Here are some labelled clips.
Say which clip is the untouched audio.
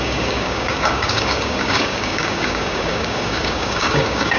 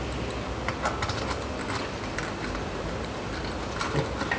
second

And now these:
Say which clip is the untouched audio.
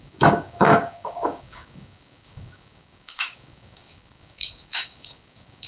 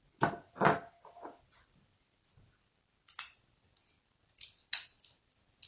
second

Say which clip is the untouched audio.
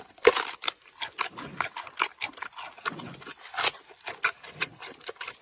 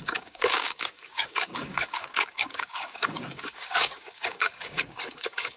first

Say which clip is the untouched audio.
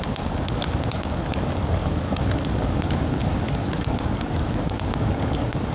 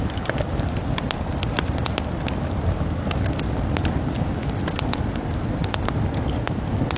second